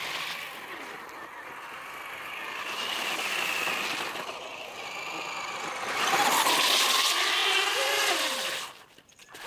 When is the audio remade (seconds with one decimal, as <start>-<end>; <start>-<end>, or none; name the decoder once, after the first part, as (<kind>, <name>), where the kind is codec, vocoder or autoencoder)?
none